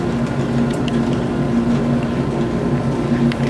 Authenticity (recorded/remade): recorded